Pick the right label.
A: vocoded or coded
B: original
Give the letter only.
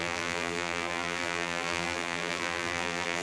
A